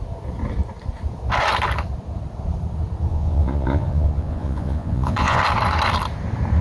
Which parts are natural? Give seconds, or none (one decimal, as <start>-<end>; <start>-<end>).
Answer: 0.0-3.1; 5.4-6.6